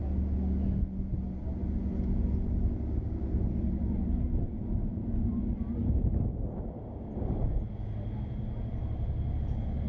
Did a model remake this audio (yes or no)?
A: no